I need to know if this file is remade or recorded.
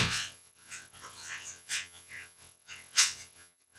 remade